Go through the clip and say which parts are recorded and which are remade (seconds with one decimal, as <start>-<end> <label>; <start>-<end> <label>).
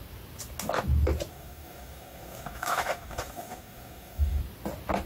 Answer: 0.0-1.3 recorded; 1.3-4.4 remade; 4.4-5.1 recorded